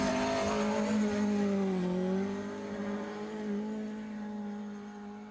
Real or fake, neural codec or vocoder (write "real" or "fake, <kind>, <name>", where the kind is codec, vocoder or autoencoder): real